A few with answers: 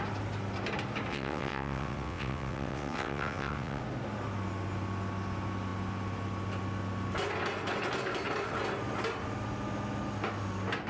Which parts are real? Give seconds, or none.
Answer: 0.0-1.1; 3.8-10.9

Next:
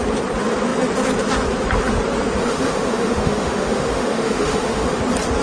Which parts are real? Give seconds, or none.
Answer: 0.0-2.4; 5.0-5.4

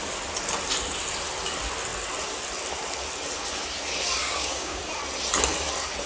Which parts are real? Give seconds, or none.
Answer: 0.0-4.2; 4.8-6.1

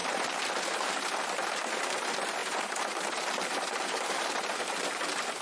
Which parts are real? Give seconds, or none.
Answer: 0.5-2.4; 4.5-5.4